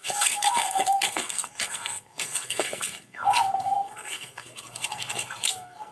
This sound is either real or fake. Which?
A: fake